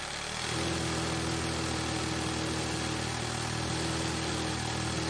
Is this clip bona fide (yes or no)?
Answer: yes